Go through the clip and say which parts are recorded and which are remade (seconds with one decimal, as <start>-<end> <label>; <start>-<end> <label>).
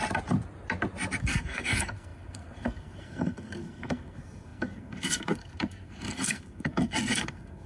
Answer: 0.0-1.2 recorded; 1.2-7.7 remade